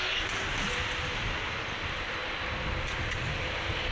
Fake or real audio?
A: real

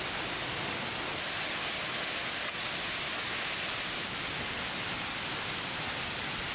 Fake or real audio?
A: real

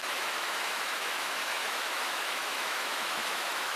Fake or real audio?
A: fake